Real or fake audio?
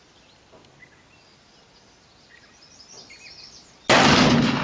real